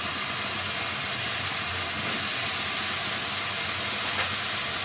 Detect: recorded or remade recorded